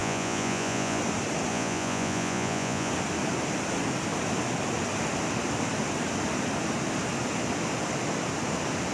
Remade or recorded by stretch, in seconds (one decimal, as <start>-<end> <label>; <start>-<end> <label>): 0.0-1.0 remade; 1.0-1.5 recorded; 1.5-2.9 remade; 2.9-8.9 recorded